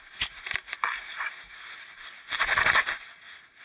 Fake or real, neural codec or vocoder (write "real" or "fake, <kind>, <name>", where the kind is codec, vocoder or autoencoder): real